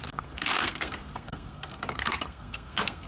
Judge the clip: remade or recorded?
remade